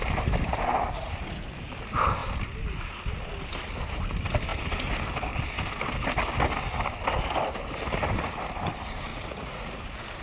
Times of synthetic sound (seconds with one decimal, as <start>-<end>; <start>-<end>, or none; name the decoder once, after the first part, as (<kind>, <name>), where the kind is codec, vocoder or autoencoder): 9.1-9.7 (vocoder, Vocos)